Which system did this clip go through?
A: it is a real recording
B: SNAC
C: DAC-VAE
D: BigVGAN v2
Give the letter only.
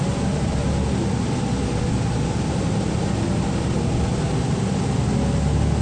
A